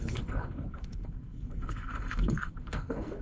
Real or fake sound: fake